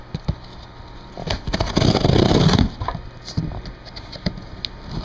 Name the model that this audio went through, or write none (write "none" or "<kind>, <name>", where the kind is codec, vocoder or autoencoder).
none